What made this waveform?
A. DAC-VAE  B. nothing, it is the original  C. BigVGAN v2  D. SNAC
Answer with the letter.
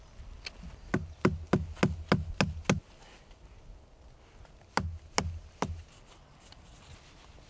B